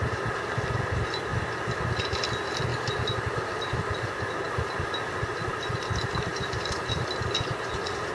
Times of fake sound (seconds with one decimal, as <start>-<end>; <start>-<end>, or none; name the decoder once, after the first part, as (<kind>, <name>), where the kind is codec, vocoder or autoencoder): 2.7-4.1 (vocoder, BigVGAN v2); 6.3-7.1